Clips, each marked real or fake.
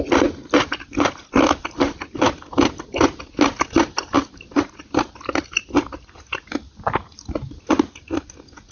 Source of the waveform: real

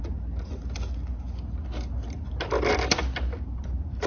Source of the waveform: real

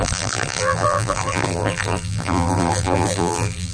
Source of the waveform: fake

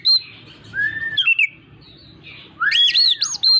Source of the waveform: real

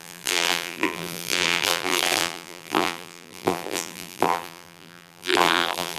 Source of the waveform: fake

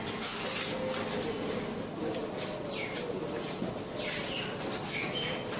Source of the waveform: real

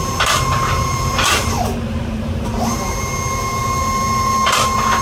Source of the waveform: fake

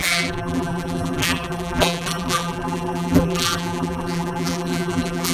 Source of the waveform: fake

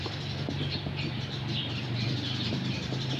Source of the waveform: fake